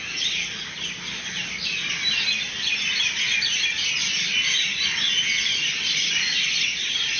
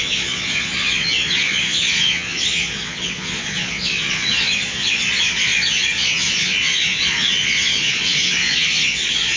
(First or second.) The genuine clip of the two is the first